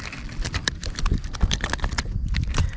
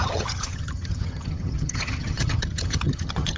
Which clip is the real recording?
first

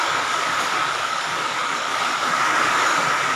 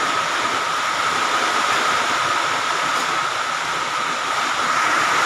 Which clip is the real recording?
second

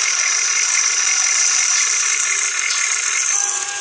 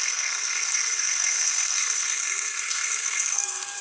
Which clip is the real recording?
first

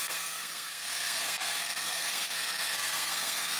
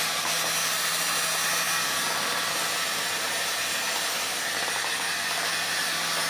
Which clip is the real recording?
second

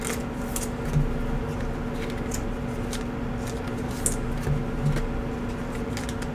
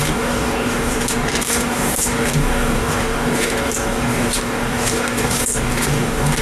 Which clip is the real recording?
first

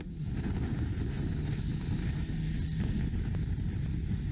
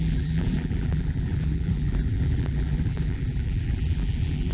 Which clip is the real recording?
first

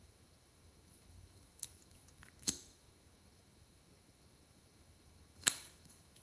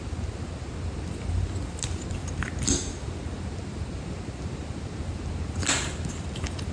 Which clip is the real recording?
second